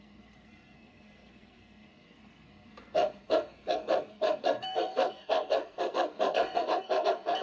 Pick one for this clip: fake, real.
fake